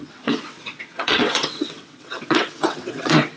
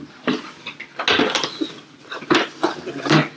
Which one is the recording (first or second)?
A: second